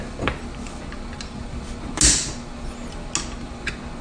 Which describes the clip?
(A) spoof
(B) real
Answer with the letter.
B